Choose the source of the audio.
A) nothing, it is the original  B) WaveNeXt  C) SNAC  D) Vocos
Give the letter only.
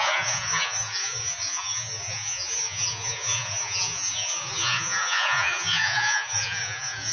D